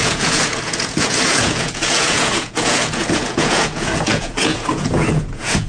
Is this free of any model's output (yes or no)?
no